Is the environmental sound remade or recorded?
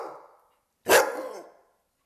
recorded